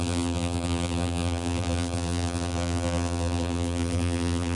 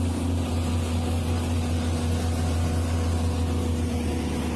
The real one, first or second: second